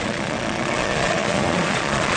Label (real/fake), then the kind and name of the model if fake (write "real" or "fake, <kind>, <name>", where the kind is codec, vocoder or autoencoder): fake, vocoder, Vocos